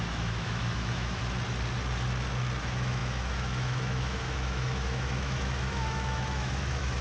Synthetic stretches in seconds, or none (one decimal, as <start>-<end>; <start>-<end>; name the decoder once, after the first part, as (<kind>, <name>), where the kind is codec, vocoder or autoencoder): 0.0-1.2 (autoencoder, DAC-VAE); 2.6-7.0